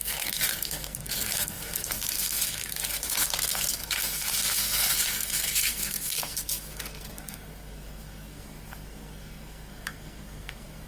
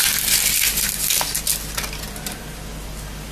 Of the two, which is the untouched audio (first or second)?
second